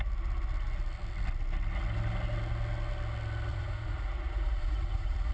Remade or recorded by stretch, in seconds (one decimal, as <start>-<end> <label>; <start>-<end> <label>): 0.0-3.5 recorded; 3.5-5.3 remade